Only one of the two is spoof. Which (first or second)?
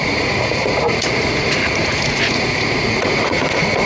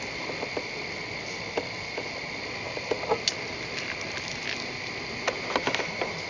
first